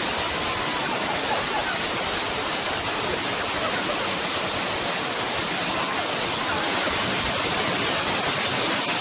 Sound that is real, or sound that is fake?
real